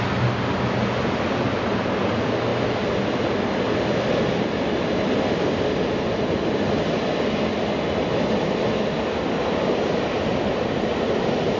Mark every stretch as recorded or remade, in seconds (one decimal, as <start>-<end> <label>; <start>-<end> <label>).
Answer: 0.0-11.6 recorded